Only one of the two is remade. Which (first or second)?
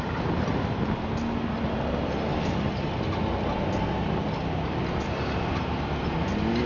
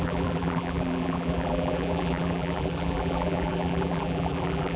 second